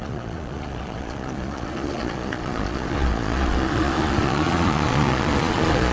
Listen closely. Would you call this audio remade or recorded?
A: remade